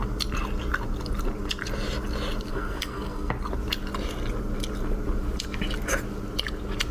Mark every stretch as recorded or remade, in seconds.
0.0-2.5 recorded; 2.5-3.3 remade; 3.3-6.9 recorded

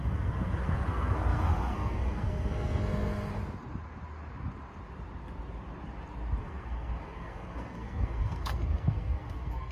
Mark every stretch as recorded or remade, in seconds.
0.0-3.3 remade; 3.3-6.4 recorded; 6.4-9.7 remade

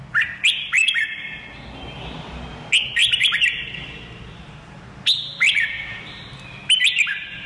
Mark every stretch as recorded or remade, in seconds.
0.0-7.5 recorded